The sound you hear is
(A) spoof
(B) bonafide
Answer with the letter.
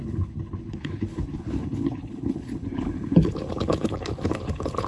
A